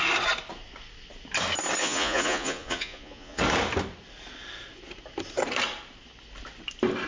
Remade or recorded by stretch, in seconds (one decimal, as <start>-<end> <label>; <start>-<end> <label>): 0.0-1.8 recorded; 1.8-3.4 remade; 3.4-7.1 recorded